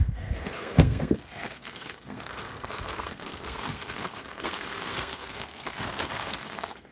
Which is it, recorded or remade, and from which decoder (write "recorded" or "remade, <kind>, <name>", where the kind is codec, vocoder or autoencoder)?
remade, codec, SNAC